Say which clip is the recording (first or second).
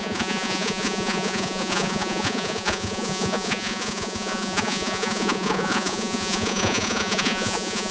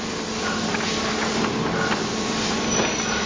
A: second